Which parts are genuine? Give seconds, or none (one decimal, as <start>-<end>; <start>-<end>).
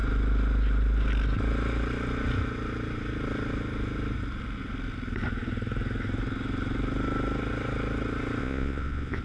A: 0.0-8.4